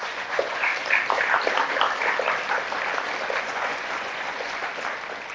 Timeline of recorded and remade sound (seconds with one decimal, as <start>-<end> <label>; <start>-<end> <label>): 0.0-0.7 remade; 0.7-3.4 recorded; 3.4-4.6 remade; 4.6-5.3 recorded